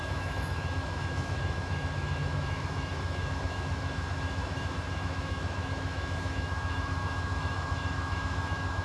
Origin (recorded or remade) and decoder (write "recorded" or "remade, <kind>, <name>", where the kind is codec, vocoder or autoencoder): remade, autoencoder, DAC-VAE